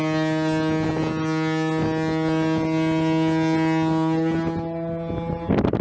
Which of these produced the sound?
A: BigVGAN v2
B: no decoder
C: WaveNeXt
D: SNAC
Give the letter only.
B